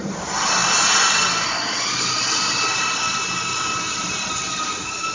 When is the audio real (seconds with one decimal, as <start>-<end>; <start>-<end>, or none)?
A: 0.0-5.1